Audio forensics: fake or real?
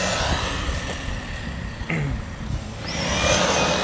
real